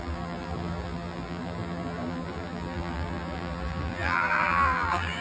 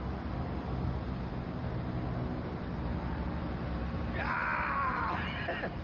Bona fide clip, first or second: second